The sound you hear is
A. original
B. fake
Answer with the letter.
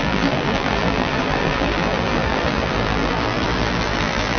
B